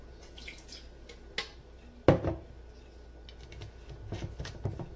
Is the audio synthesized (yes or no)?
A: no